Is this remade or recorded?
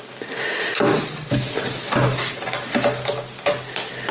recorded